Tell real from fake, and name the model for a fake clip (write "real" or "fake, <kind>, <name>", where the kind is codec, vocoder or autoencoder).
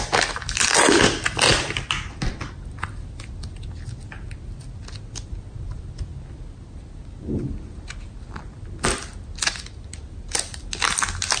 real